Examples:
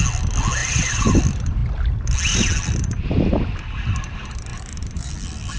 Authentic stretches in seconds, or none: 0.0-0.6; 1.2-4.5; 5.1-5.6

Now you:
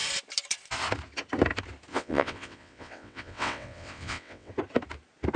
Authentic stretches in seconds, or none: 0.0-1.9; 4.5-5.4

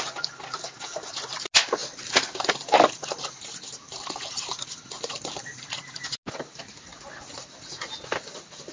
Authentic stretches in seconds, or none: 0.0-8.7

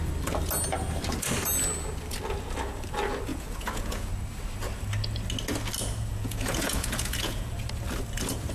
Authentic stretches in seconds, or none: 0.0-3.3; 4.1-6.1; 7.5-8.5

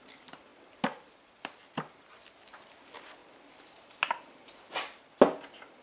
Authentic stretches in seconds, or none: 0.0-5.8